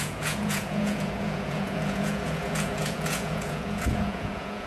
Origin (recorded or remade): remade